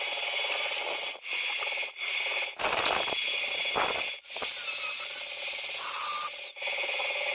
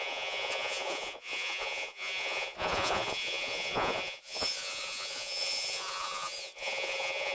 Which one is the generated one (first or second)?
second